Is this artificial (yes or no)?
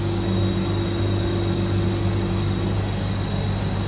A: no